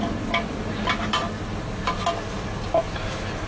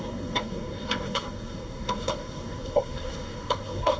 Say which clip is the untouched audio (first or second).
first